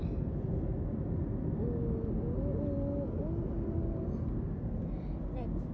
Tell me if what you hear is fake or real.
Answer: real